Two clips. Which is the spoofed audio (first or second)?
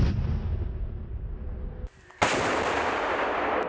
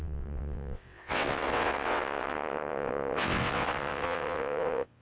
second